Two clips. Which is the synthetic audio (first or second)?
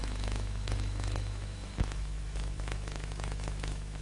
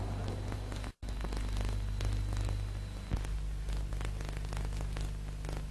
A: first